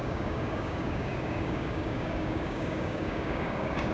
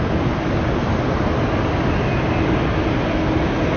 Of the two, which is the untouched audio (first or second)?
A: second